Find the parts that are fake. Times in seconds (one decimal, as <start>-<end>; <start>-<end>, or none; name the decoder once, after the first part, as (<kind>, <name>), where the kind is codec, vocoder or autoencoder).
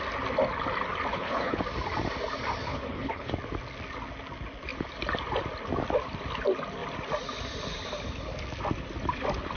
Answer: 1.1-1.6 (codec, HILCodec); 2.6-3.3